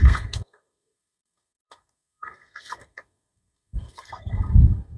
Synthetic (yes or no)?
yes